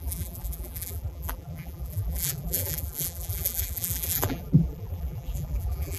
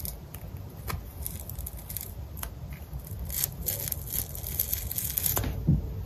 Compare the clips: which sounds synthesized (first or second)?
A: first